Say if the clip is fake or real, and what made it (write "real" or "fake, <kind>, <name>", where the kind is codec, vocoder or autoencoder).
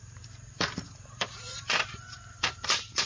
fake, vocoder, BigVGAN v2